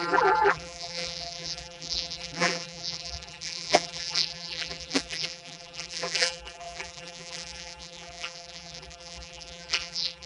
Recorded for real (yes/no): no